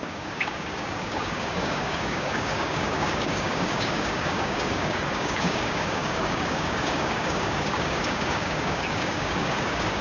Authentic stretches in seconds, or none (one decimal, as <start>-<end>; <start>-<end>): none